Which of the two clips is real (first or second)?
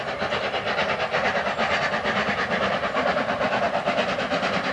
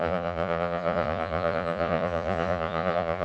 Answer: first